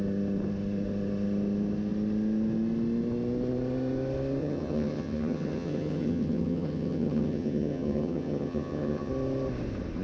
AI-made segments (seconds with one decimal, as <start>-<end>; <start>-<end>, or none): 4.4-9.1

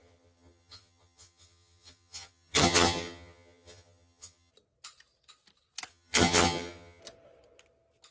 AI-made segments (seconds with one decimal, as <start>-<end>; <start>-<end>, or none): 0.0-4.5; 5.9-7.0

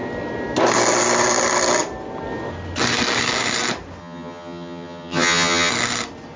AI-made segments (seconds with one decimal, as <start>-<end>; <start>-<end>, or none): 4.0-5.7

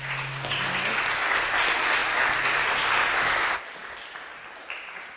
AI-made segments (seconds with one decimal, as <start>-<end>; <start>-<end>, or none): none

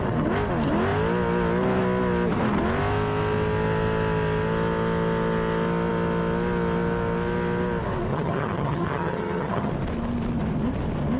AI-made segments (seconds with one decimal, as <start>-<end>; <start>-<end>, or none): 8.1-9.7

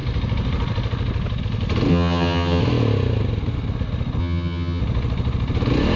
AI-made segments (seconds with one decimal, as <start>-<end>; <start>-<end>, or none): 1.9-2.6; 4.2-4.8